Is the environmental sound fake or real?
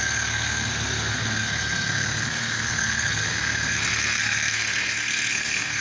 fake